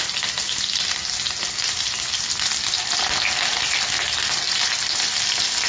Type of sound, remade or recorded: recorded